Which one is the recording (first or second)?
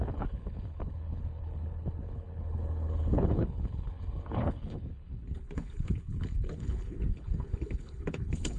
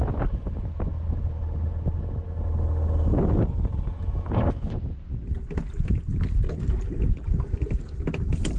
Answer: second